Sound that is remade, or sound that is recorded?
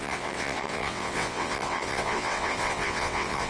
remade